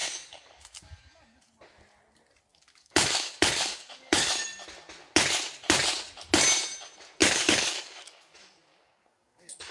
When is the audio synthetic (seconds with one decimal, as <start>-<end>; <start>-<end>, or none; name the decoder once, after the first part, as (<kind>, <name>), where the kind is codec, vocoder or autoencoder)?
0.0-1.5 (codec, DAC); 2.5-4.3; 7.2-9.7